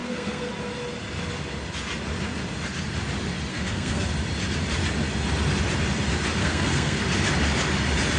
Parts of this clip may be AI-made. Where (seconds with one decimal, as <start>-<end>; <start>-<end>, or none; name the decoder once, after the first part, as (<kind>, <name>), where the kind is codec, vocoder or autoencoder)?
0.0-0.5 (codec, SNAC); 3.5-4.1; 6.4-7.0